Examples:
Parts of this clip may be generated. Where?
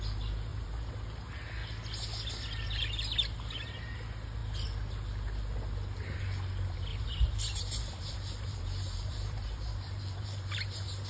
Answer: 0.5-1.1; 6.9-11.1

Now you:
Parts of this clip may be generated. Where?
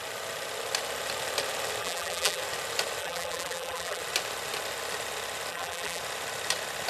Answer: 1.8-2.4; 3.0-4.0; 5.5-6.0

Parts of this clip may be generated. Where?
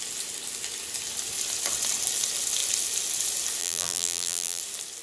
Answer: 3.6-4.6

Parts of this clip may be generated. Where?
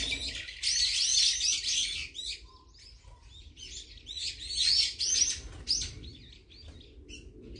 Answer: none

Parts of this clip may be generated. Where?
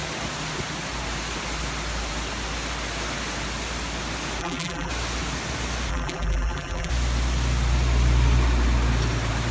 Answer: 4.4-4.9; 5.9-6.9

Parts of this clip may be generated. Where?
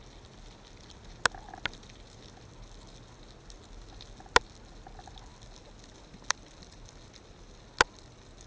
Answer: none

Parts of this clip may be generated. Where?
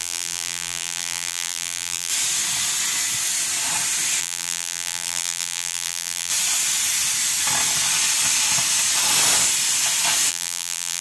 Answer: 0.0-2.1; 4.2-6.3; 10.3-11.0